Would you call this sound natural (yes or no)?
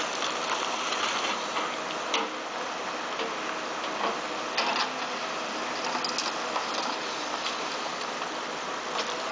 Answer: yes